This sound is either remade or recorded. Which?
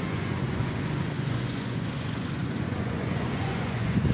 remade